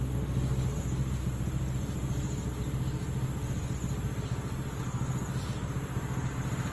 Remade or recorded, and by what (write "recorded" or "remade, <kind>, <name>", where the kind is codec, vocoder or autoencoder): recorded